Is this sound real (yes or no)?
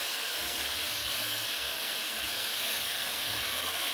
no